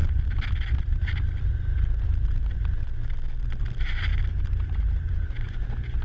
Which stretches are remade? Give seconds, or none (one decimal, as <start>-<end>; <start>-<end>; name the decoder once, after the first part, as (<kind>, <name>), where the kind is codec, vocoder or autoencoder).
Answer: none

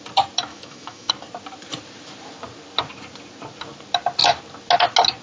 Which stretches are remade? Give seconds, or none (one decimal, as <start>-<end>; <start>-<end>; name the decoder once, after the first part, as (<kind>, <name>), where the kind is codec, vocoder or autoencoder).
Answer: 0.5-1.1 (autoencoder, DAC-VAE)

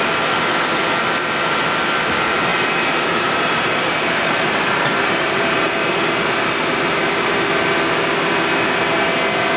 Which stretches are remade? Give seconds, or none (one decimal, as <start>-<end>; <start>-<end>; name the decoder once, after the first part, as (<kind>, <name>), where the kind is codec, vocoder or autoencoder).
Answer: 2.5-5.6 (vocoder, BigVGAN v2)